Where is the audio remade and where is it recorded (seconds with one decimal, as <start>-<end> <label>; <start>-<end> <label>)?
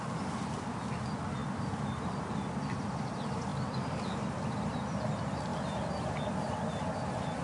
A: 0.0-7.4 recorded